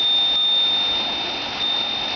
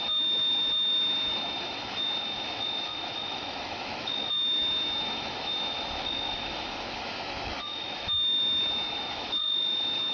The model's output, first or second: second